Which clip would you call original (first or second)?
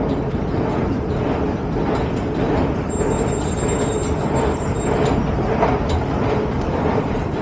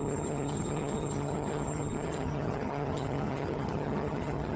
first